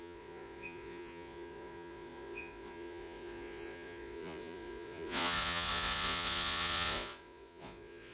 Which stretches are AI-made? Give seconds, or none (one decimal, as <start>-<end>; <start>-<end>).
0.0-8.1